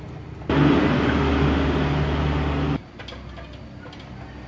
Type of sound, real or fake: real